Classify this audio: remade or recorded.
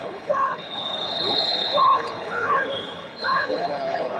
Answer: remade